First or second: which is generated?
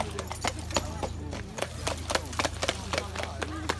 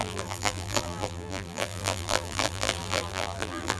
second